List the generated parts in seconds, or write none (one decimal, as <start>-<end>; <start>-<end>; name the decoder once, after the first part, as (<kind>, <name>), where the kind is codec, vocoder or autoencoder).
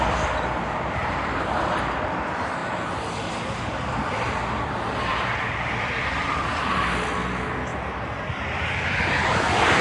1.0-1.8 (vocoder, BigVGAN v2); 2.6-3.3; 5.1-6.8; 7.7-8.4